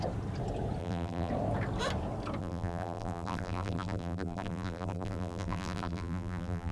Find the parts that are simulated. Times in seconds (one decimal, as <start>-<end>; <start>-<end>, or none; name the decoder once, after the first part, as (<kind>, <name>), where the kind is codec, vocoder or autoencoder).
0.8-1.3 (vocoder, BigVGAN v2); 2.4-6.7